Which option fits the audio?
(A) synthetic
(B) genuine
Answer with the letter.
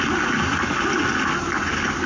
B